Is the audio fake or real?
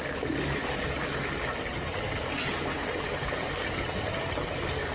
real